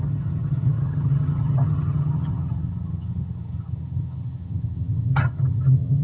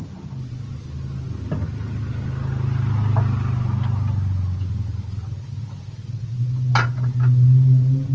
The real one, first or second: second